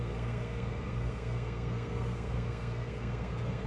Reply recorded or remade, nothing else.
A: remade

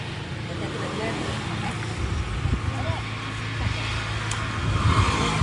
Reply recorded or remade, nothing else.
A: recorded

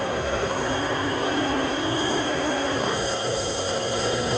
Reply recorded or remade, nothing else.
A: remade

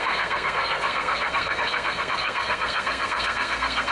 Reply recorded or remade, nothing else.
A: remade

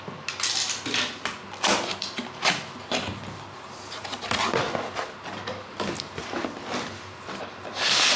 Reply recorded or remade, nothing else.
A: recorded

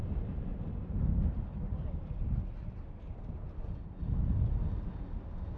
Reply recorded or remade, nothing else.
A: recorded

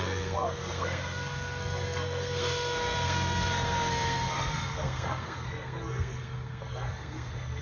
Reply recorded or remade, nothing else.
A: remade